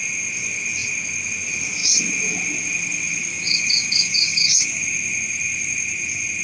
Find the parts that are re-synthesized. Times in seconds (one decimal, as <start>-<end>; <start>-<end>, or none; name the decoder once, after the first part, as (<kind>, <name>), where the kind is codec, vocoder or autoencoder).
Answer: 3.3-4.8 (codec, DAC)